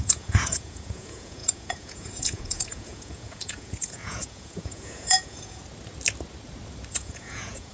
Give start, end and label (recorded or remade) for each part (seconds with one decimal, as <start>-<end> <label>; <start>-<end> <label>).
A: 0.0-5.6 remade; 5.6-6.9 recorded; 6.9-7.7 remade